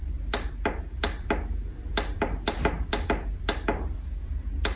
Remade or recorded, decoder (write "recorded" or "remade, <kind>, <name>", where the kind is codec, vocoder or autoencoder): remade, vocoder, BigVGAN v2